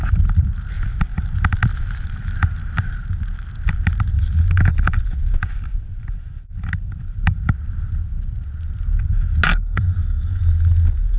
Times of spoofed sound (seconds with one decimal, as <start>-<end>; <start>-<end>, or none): 9.5-10.4